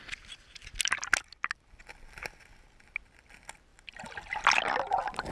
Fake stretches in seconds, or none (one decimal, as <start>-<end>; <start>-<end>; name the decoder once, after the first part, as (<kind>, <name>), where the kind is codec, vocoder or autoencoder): none